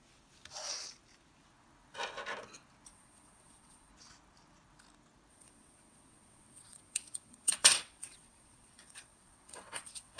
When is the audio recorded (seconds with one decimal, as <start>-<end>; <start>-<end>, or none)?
0.0-2.9; 3.9-5.3